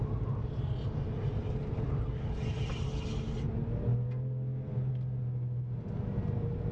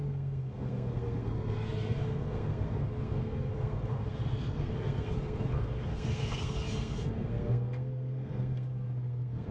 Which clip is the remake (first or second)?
second